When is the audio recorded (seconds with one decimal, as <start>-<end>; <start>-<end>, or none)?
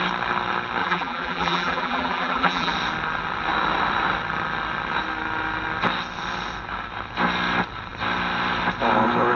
0.0-0.8; 2.7-9.4